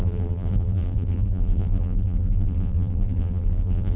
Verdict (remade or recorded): remade